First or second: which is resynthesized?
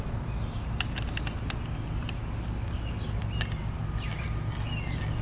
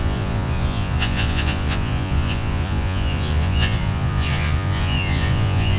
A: second